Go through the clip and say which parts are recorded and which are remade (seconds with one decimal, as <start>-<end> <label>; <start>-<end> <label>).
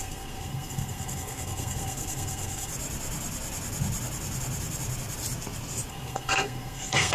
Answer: 0.0-2.7 remade; 2.7-5.9 recorded; 5.9-7.1 remade